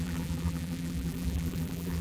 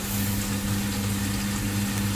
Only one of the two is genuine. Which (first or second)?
second